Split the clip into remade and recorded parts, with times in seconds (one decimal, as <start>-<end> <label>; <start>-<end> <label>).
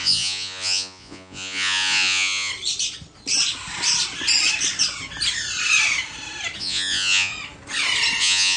0.0-2.5 remade; 2.5-6.6 recorded; 6.6-7.3 remade; 7.3-8.2 recorded; 8.2-8.6 remade